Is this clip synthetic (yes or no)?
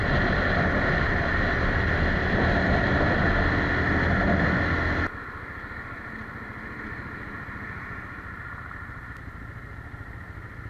no